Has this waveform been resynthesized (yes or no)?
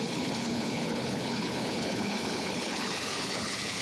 yes